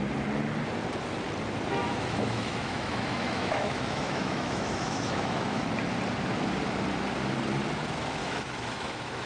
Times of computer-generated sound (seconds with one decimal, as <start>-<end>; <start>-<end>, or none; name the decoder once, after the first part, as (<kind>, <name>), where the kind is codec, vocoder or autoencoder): 1.8-5.7 (autoencoder, DAC-VAE); 8.2-9.3